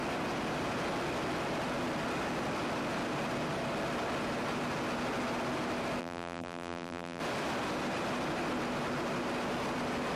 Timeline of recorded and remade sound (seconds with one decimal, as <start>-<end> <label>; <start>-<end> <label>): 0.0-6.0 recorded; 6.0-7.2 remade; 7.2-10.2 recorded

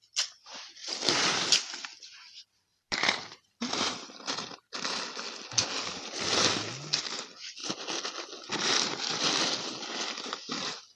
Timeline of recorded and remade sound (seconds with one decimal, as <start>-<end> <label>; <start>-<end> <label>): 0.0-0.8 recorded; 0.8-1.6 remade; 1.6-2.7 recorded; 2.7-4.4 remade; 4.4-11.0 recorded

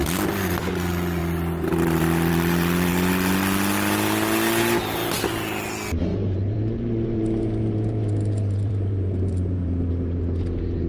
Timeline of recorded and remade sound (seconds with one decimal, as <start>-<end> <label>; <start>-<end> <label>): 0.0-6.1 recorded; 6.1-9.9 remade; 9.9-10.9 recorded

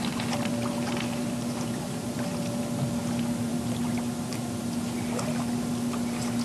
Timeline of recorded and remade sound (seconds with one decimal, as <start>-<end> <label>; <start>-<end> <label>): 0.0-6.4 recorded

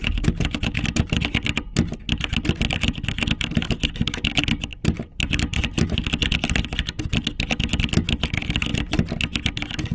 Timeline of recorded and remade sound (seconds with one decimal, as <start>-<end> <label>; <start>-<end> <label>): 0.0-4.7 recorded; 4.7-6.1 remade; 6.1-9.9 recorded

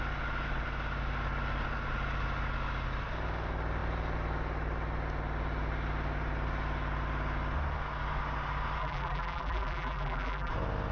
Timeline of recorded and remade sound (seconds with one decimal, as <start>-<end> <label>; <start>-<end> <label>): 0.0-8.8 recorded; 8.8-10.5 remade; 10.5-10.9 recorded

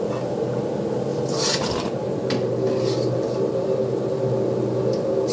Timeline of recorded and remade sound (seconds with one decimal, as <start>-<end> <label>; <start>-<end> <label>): 0.0-1.1 recorded; 1.1-2.3 remade; 2.3-5.3 recorded

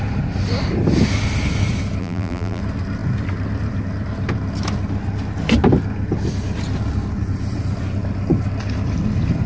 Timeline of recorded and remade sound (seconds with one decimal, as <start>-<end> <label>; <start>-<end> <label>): 0.0-2.0 recorded; 2.0-2.6 remade; 2.6-9.5 recorded